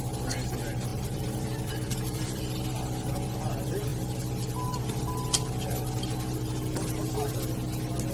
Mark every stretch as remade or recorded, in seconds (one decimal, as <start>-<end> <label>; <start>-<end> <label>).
0.0-0.9 recorded; 0.9-2.4 remade; 2.4-8.1 recorded